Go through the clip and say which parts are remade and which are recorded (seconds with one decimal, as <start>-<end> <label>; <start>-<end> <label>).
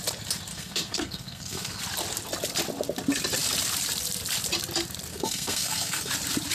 0.0-0.5 recorded; 0.5-1.8 remade; 1.8-5.1 recorded; 5.1-6.1 remade; 6.1-6.5 recorded